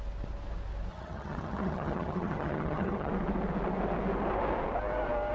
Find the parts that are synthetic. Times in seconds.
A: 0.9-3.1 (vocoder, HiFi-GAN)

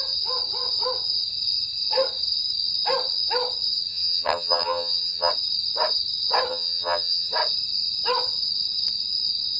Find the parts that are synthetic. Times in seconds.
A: 3.9-5.3 (vocoder, HiFi-GAN); 6.5-7.3

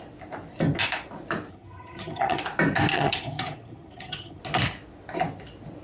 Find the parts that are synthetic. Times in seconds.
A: 1.5-2.4 (vocoder, HiFi-GAN); 2.9-4.4

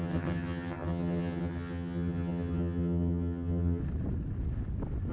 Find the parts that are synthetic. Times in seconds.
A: 0.0-3.8 (vocoder, HiFi-GAN)

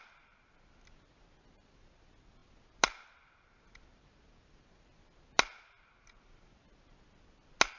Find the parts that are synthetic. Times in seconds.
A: none

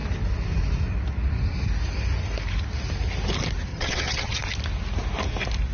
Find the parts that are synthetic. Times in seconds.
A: 3.7-4.4 (vocoder, HiFi-GAN)